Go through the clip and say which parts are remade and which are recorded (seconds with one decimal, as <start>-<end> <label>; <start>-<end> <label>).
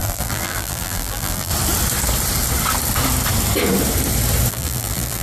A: 0.0-1.5 remade; 1.5-4.5 recorded; 4.5-5.2 remade